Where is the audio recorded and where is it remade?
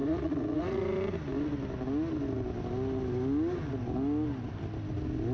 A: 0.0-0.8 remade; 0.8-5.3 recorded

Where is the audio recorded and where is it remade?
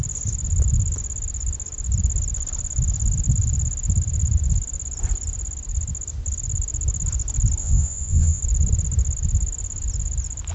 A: 0.0-7.6 recorded; 7.6-8.4 remade; 8.4-10.5 recorded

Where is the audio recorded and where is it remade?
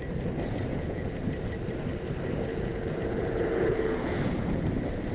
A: 0.0-0.7 recorded; 0.7-1.2 remade; 1.2-2.5 recorded; 2.5-4.6 remade; 4.6-5.1 recorded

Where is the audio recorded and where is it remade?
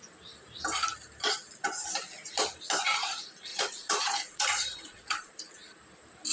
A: 0.0-3.5 recorded; 3.5-5.3 remade; 5.3-6.3 recorded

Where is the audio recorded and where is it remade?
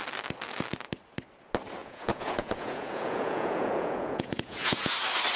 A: 0.0-1.8 recorded; 1.8-4.9 remade; 4.9-5.4 recorded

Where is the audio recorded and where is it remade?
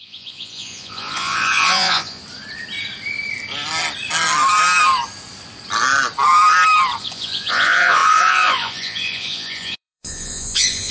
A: 0.0-2.2 remade; 2.2-7.0 recorded; 7.0-10.9 remade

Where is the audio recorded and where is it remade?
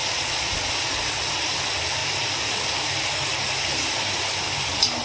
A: 0.0-0.9 remade; 0.9-5.0 recorded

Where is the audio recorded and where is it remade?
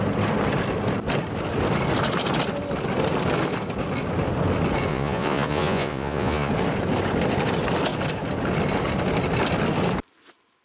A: 0.0-4.9 recorded; 4.9-6.5 remade; 6.5-10.6 recorded